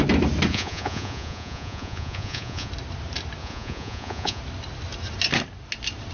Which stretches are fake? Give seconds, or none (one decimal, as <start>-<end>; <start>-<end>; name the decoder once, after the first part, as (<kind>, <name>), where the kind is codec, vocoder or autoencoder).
0.5-2.7 (vocoder, Vocos); 3.4-4.4